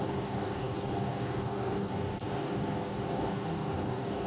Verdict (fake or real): fake